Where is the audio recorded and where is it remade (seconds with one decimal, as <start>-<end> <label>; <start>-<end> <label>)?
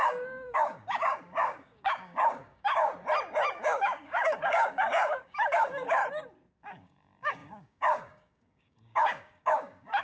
0.0-2.9 remade; 2.9-3.5 recorded; 3.5-6.0 remade; 6.0-6.6 recorded; 6.6-10.0 remade